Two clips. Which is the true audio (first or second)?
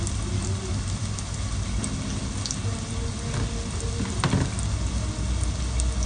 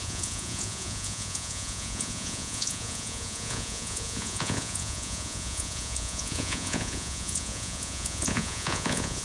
first